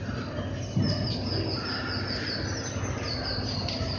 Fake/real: real